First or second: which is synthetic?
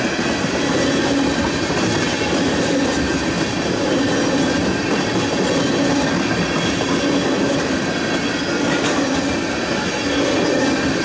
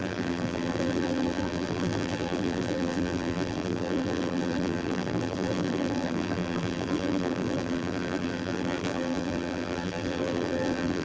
second